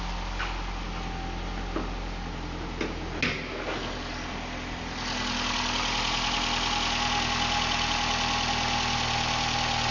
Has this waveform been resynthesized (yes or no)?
no